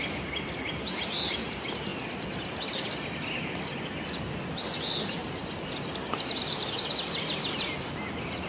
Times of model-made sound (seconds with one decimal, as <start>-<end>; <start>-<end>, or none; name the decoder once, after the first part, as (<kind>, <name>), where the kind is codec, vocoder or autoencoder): none